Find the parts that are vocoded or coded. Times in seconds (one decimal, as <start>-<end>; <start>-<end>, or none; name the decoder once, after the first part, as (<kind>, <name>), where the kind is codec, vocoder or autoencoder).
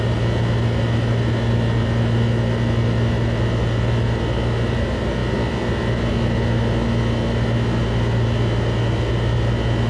none